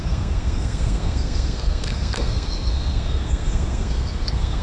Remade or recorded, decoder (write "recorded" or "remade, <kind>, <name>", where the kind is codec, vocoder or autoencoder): remade, codec, SNAC